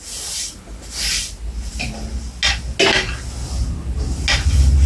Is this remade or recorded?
recorded